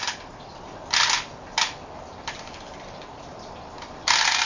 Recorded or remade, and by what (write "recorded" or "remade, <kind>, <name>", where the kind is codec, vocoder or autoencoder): recorded